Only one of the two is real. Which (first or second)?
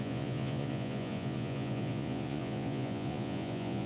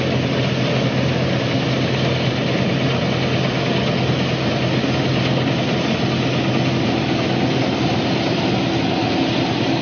second